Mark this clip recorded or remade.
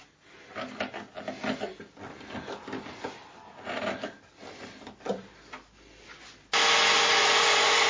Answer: recorded